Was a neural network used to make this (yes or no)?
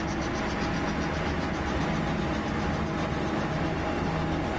no